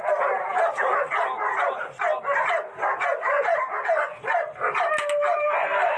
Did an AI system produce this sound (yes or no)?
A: no